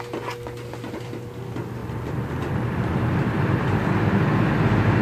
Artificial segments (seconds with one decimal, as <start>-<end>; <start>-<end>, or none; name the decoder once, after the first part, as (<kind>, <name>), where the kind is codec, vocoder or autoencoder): 1.8-5.0 (vocoder, BigVGAN v2)